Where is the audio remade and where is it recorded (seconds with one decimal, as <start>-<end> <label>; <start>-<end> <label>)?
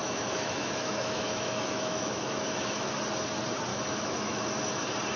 0.0-2.9 remade; 2.9-3.7 recorded; 3.7-4.4 remade; 4.4-5.2 recorded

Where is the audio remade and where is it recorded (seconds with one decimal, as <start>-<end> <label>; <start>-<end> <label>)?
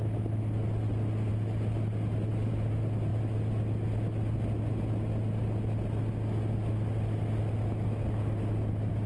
0.0-9.1 recorded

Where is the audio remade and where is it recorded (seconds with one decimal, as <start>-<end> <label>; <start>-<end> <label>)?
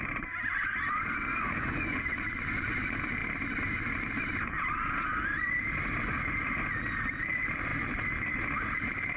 0.0-1.3 recorded; 1.3-2.0 remade; 2.0-9.2 recorded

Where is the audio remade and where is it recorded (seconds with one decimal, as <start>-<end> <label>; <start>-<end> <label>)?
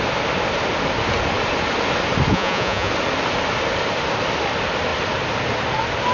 0.0-2.3 recorded; 2.3-2.9 remade; 2.9-6.1 recorded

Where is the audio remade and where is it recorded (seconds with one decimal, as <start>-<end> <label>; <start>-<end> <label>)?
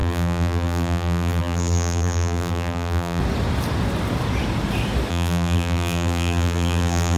0.0-3.2 remade; 3.2-5.1 recorded; 5.1-7.2 remade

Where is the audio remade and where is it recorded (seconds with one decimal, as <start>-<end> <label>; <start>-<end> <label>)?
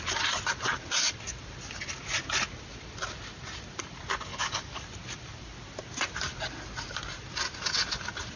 0.0-4.3 recorded; 4.3-4.8 remade; 4.8-8.4 recorded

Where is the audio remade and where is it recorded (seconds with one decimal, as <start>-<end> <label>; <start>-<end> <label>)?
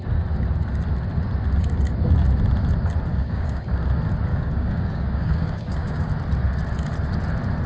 0.0-3.1 recorded; 3.1-3.7 remade; 3.7-4.3 recorded; 4.3-6.1 remade; 6.1-7.7 recorded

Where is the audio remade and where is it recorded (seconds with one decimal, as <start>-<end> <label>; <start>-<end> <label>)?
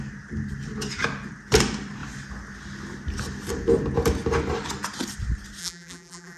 0.0-5.6 recorded; 5.6-6.4 remade